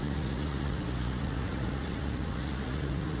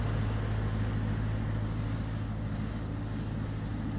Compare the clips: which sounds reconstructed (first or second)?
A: first